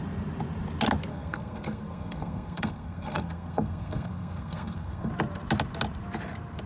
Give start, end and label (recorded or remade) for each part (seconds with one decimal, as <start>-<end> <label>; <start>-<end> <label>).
0.0-1.1 recorded; 1.1-5.1 remade; 5.1-6.7 recorded

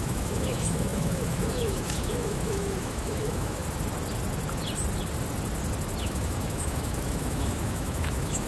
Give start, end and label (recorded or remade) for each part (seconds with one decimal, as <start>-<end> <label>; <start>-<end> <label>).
0.0-3.6 remade; 3.6-6.0 recorded; 6.0-8.5 remade

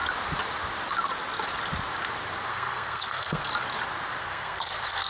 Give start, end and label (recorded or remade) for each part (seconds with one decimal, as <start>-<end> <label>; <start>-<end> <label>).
0.0-2.5 recorded; 2.5-3.4 remade; 3.4-4.2 recorded; 4.2-5.1 remade

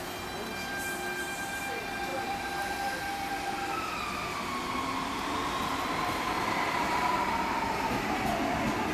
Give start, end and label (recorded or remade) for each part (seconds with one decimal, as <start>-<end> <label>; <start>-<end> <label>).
0.0-2.1 recorded; 2.1-2.7 remade; 2.7-8.9 recorded

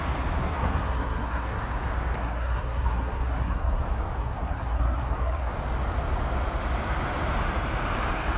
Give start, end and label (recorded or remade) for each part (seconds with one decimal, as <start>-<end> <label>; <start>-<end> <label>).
0.0-0.4 recorded; 0.4-1.6 remade; 1.6-2.2 recorded; 2.2-3.8 remade; 3.8-4.2 recorded; 4.2-5.5 remade; 5.5-8.4 recorded

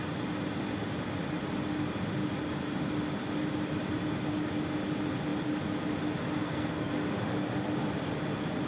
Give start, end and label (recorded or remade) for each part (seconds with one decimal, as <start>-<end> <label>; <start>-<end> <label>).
0.0-6.4 recorded; 6.4-6.9 remade; 6.9-8.7 recorded

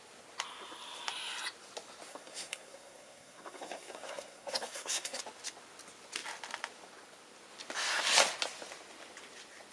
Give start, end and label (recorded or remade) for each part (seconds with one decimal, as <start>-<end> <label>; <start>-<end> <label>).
0.0-2.1 recorded; 2.1-5.2 remade; 5.2-9.7 recorded